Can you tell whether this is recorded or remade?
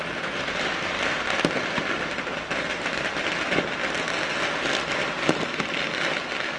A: recorded